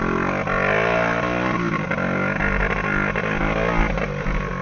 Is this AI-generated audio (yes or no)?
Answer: no